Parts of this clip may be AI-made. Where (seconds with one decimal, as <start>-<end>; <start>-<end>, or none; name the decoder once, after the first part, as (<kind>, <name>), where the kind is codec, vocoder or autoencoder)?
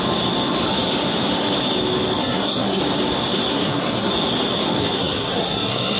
2.2-2.8 (codec, SNAC); 3.5-4.1; 4.8-6.0